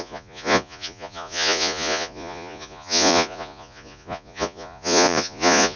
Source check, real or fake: fake